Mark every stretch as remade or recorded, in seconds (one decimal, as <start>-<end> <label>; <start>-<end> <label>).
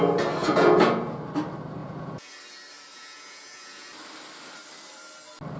0.0-0.4 recorded; 0.4-1.2 remade; 1.2-1.8 recorded; 1.8-2.3 remade; 2.3-2.9 recorded; 2.9-3.9 remade; 3.9-5.6 recorded